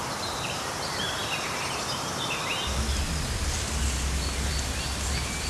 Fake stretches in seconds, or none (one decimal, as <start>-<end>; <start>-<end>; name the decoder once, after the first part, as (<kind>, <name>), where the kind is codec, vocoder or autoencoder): none